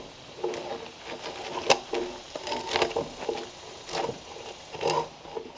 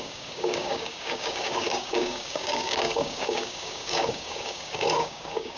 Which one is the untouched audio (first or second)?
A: first